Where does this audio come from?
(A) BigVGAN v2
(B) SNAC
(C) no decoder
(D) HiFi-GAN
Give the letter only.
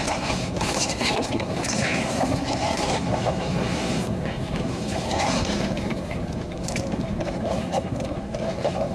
B